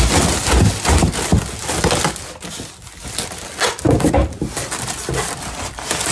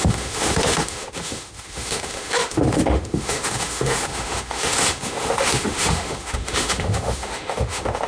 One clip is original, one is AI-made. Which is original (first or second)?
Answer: first